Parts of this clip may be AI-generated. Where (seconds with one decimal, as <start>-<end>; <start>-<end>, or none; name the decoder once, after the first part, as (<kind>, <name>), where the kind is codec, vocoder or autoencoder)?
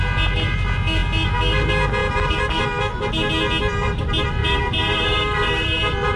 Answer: 2.0-2.6 (vocoder, BigVGAN v2); 4.4-5.8